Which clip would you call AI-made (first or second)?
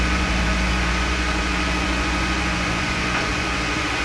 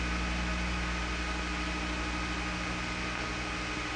first